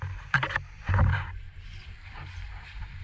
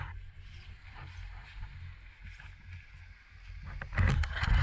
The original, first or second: second